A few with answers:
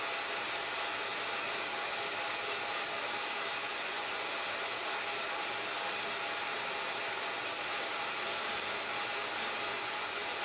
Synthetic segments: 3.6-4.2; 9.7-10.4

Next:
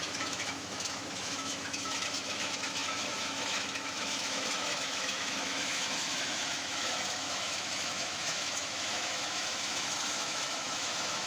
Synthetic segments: 0.0-11.3